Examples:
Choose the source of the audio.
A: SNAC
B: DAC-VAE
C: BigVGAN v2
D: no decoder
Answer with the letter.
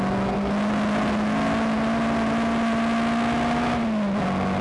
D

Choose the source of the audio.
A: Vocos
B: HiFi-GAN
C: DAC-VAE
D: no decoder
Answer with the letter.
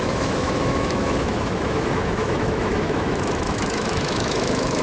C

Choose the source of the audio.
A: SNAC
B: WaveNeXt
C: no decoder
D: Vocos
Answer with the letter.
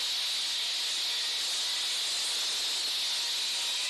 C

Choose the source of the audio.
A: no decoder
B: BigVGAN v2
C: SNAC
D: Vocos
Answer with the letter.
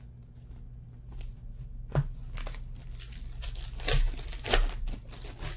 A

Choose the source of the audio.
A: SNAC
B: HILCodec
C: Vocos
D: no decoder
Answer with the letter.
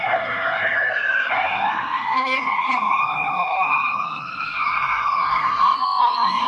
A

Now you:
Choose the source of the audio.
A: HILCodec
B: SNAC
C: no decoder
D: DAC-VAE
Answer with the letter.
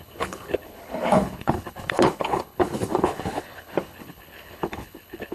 A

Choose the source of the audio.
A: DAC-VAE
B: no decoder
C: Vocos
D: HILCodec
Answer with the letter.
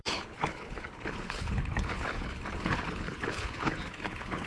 D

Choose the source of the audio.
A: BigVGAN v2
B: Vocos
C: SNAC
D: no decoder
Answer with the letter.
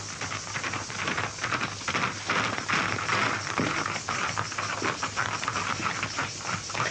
D